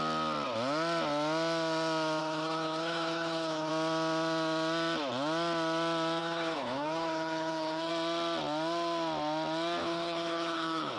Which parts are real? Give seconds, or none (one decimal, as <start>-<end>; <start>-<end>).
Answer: 0.0-2.2; 3.7-6.2; 7.9-9.8